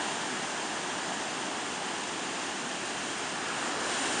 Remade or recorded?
recorded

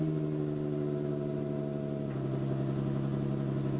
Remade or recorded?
recorded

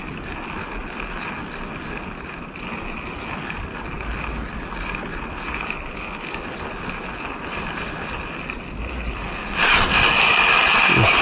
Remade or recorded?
recorded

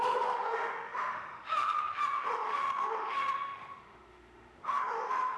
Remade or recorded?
remade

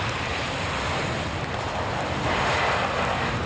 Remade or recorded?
recorded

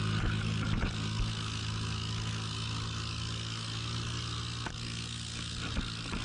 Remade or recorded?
recorded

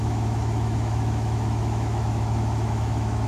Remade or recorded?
remade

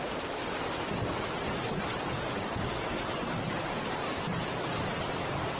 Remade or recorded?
remade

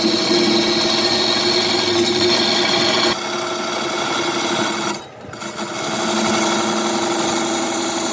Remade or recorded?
recorded